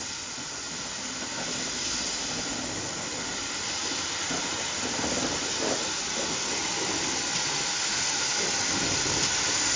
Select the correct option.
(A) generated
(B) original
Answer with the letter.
B